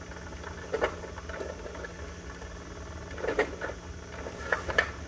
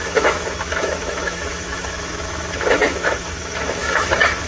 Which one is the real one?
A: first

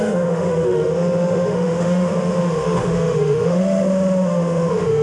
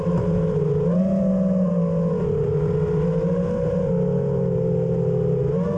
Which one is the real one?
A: second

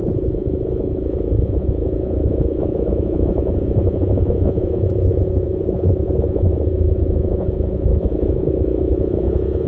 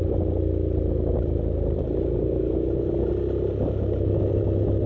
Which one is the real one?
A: second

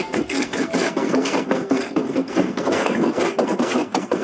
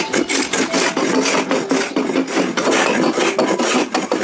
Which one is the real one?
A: second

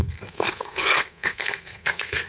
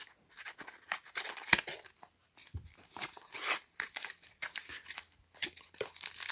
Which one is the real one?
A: second